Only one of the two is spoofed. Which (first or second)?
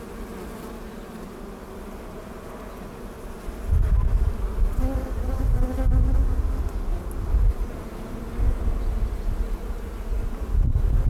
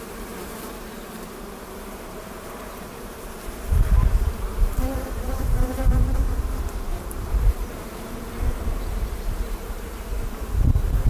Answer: second